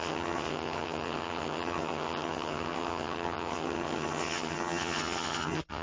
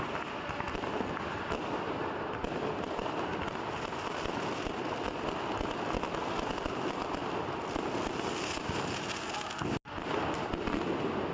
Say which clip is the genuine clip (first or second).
second